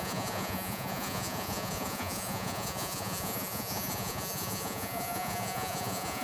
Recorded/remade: remade